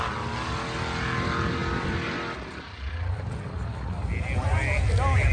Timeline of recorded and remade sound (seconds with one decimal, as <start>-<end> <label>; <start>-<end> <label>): 0.0-5.3 recorded